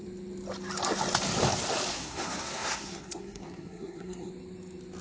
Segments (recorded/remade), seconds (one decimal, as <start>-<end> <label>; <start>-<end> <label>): 0.0-1.9 recorded; 1.9-4.3 remade; 4.3-5.0 recorded